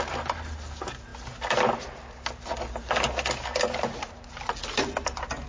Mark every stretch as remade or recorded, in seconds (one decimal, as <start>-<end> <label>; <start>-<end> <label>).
0.0-5.5 recorded